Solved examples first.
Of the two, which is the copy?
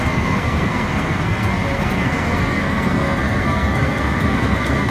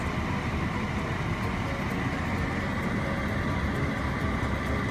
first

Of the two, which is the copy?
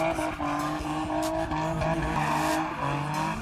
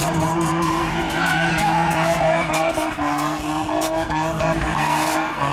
second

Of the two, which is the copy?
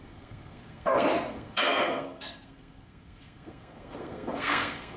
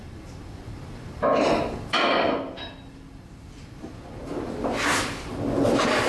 first